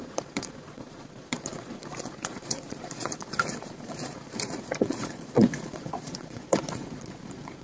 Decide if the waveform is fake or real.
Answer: fake